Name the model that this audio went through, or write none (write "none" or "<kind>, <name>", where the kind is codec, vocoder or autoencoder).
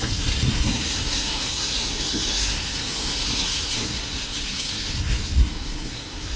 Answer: codec, SNAC